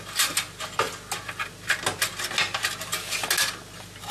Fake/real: real